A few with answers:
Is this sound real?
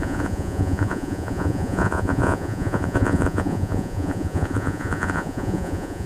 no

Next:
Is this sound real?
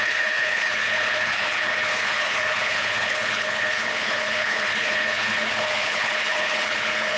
no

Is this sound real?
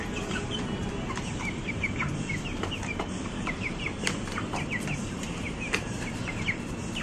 no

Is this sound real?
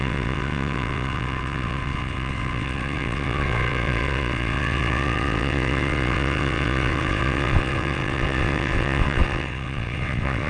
no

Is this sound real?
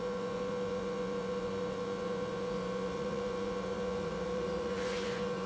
no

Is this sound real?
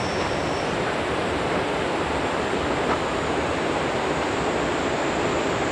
yes